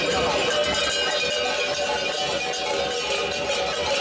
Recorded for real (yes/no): yes